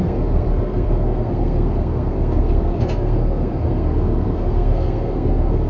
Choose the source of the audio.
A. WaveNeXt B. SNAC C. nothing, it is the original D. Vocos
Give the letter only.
B